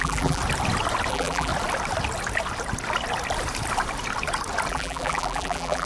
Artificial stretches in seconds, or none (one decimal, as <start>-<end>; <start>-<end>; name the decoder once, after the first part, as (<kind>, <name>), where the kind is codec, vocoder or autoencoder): 0.0-0.4 (vocoder, BigVGAN v2); 1.1-1.5; 4.7-5.9